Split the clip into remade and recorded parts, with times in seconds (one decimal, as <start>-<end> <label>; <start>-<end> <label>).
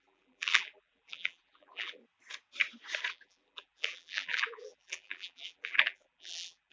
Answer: 0.0-2.0 remade; 2.0-3.1 recorded; 3.1-6.7 remade